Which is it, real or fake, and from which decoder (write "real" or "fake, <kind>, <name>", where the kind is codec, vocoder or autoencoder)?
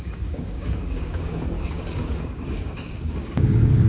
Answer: fake, codec, DAC